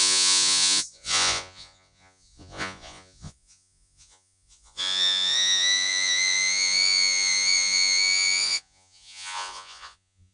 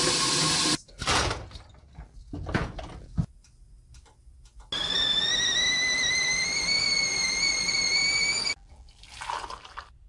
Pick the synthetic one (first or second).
first